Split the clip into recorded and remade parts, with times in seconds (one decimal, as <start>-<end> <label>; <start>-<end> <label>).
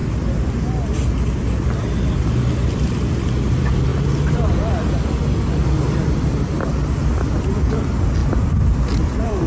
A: 0.0-3.9 recorded; 3.9-4.7 remade; 4.7-8.2 recorded; 8.2-9.5 remade